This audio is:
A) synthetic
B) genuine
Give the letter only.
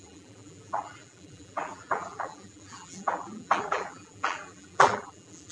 A